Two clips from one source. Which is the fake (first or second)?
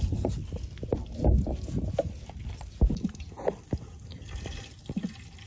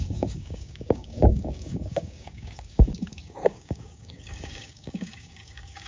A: second